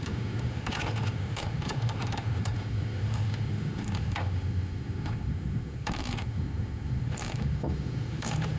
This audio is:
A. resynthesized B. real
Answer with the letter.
A